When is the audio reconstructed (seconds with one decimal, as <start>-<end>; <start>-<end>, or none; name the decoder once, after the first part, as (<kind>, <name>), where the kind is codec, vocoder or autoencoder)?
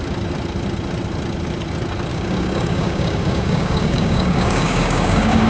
2.1-5.5 (codec, DAC)